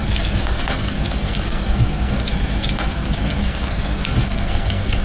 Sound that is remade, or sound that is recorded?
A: remade